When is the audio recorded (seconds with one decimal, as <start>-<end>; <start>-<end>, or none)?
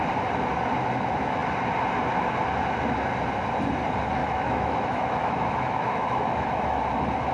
0.0-4.2; 6.8-7.3